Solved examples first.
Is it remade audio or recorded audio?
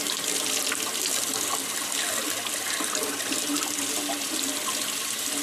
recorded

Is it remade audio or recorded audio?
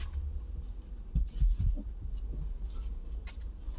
recorded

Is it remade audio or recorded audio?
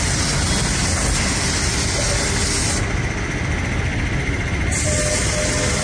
recorded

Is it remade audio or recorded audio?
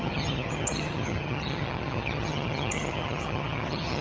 remade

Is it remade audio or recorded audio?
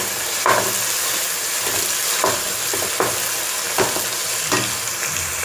recorded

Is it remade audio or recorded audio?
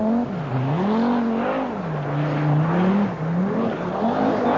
recorded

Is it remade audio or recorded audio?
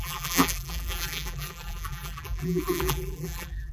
remade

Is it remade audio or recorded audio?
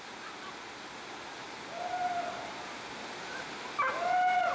recorded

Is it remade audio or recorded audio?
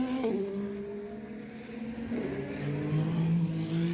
recorded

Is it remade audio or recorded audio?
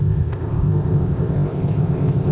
remade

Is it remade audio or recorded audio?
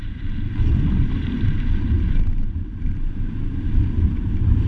remade